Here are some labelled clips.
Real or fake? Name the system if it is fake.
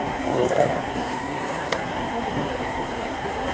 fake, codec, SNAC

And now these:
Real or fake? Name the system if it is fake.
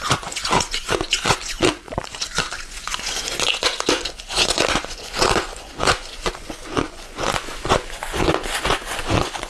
fake, vocoder, Vocos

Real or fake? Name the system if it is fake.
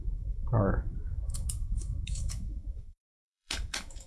fake, autoencoder, DAC-VAE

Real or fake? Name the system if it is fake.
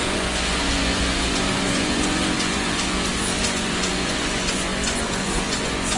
fake, vocoder, Vocos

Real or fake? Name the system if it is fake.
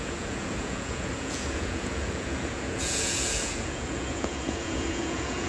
fake, vocoder, Vocos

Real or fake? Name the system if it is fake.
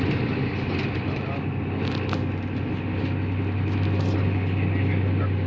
real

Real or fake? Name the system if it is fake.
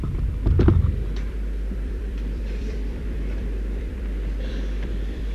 fake, vocoder, BigVGAN v2